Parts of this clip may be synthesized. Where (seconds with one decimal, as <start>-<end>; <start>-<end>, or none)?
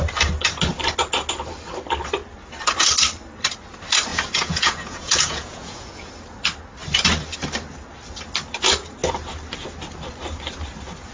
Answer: 4.1-6.1